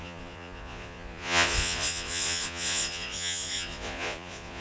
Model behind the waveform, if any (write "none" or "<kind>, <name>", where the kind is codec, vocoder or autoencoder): vocoder, Vocos